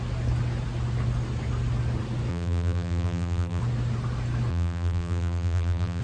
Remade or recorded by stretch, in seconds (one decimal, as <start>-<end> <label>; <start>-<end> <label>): 0.0-2.3 recorded; 2.3-3.6 remade; 3.6-4.5 recorded; 4.5-6.0 remade